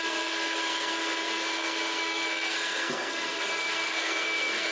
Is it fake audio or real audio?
fake